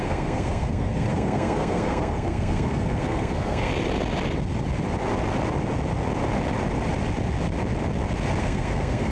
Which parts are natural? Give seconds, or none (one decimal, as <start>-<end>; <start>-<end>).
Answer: 3.7-8.4